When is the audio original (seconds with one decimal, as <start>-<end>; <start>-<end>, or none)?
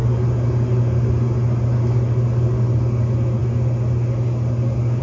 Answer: 0.0-5.0